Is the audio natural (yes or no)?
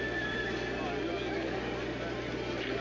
yes